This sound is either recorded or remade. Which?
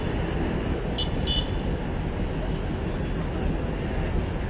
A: recorded